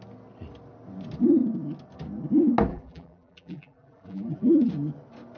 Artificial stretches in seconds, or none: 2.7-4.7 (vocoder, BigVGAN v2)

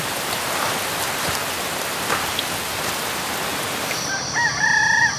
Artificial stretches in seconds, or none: 3.5-5.2 (vocoder, BigVGAN v2)

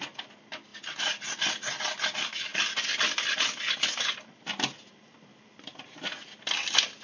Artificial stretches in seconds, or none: none

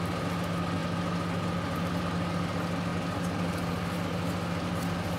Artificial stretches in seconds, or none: none